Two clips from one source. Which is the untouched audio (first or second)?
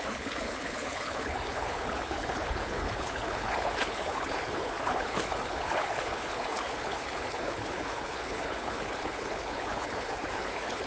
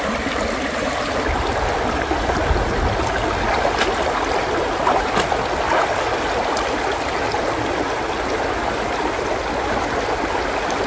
second